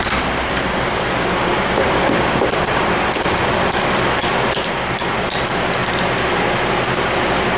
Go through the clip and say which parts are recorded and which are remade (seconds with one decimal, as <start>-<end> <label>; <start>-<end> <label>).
0.0-5.8 remade; 5.8-7.6 recorded